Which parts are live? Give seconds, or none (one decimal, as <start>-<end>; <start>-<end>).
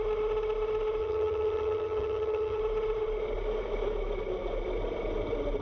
0.0-1.0; 2.6-5.6